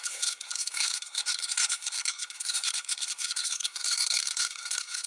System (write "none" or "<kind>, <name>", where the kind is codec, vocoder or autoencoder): codec, SNAC